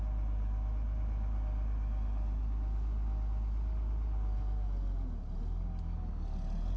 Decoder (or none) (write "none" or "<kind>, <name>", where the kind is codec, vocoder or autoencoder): none